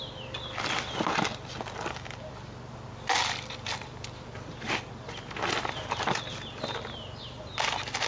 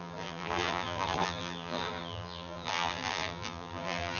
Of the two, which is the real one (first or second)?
first